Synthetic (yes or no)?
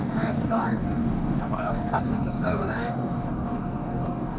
yes